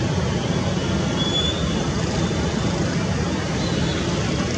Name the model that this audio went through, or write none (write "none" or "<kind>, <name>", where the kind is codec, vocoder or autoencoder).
none